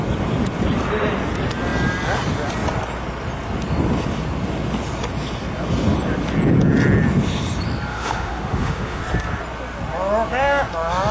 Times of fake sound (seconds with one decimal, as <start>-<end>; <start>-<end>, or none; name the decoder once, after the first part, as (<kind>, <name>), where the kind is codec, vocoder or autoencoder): 7.9-9.0 (autoencoder, DAC-VAE)